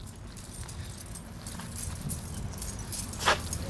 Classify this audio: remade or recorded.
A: recorded